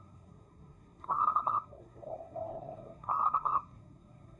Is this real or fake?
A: fake